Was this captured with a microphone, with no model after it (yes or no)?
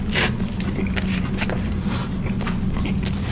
yes